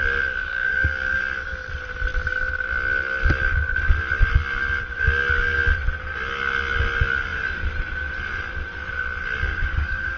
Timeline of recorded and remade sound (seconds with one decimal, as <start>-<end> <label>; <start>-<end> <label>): 0.0-0.4 recorded; 0.4-1.2 remade; 1.2-9.5 recorded; 9.5-10.2 remade